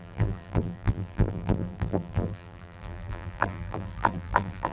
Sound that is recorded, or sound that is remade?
remade